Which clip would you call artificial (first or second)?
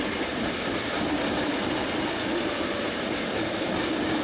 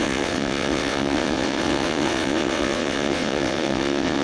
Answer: second